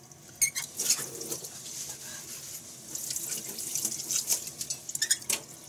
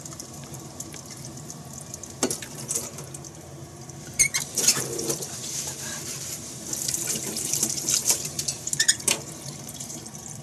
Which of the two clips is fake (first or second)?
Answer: second